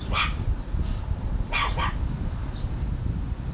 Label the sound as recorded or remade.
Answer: recorded